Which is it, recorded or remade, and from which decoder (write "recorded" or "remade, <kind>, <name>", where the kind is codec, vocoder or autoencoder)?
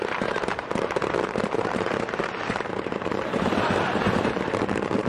remade, vocoder, BigVGAN v2